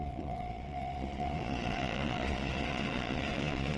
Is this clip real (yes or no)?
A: no